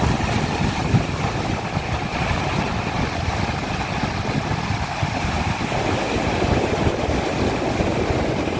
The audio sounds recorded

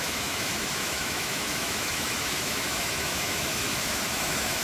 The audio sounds remade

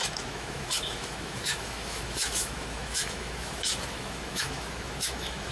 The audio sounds remade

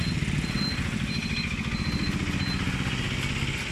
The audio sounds recorded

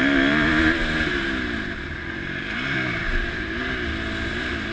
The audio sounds recorded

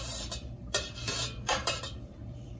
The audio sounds remade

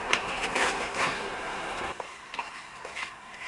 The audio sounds remade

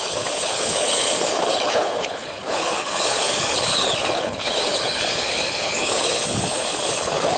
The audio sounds remade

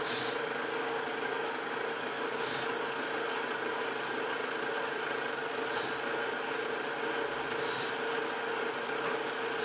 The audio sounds recorded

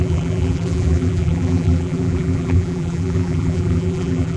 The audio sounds remade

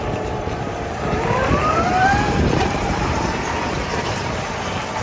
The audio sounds remade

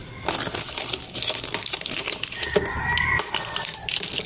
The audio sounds remade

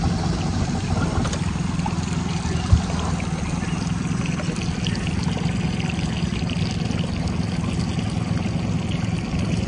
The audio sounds recorded